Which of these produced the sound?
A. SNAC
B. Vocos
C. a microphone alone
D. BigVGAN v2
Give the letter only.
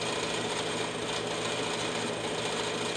C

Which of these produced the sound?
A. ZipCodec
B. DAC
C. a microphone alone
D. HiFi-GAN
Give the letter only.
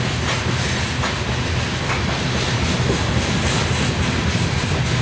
C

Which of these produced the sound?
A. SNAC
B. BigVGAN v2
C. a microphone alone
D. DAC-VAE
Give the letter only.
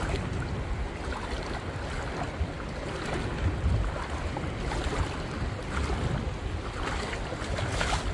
C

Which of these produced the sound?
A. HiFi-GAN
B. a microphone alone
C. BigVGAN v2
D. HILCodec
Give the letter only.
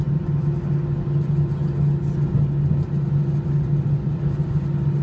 B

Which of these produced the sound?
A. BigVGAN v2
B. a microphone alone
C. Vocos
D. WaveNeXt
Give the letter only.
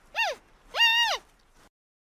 B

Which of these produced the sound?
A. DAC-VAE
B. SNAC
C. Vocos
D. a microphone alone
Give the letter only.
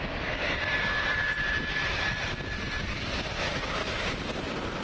D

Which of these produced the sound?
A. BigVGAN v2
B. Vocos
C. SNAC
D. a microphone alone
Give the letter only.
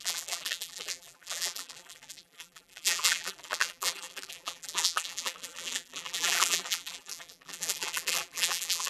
A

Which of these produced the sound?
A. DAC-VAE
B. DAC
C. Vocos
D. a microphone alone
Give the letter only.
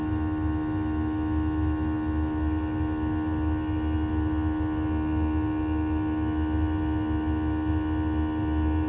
D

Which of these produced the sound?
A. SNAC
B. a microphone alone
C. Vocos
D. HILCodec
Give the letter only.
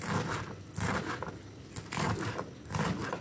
B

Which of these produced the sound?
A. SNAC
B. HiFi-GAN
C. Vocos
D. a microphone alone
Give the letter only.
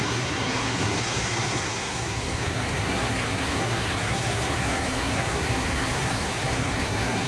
A